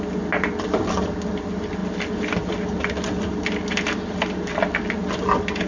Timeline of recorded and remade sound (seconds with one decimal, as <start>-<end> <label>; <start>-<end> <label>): 0.0-5.7 recorded